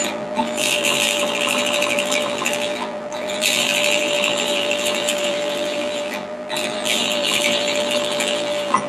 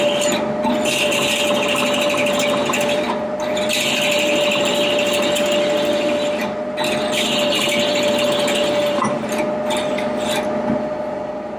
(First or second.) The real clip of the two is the second